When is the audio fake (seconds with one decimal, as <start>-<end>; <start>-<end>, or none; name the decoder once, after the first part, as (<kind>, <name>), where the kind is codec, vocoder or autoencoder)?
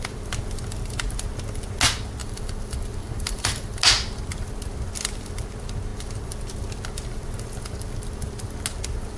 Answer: 2.2-3.8 (vocoder, BigVGAN v2)